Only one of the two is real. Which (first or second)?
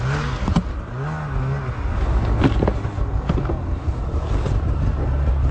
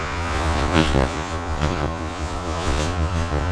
first